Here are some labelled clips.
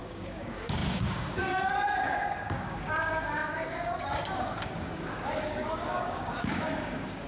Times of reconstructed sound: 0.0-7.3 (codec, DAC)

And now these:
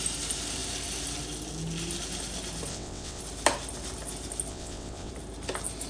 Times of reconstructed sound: 2.7-3.2 (vocoder, WaveNeXt); 4.5-5.1

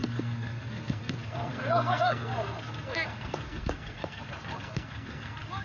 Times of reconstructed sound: 0.0-5.6 (codec, SNAC)

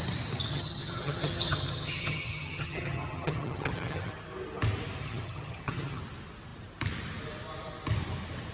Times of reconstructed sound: 0.5-4.1 (vocoder, HiFi-GAN); 5.0-6.0